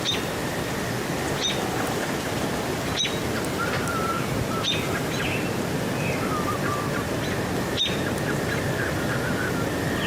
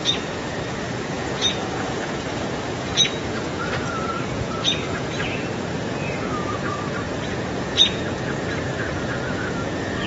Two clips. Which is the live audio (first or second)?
first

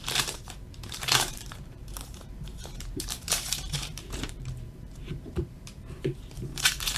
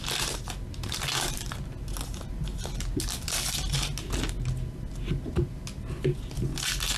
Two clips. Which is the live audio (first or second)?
second